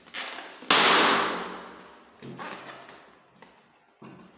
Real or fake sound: real